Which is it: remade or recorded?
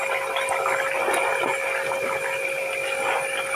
recorded